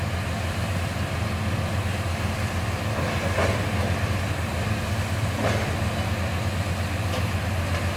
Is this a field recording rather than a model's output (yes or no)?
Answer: yes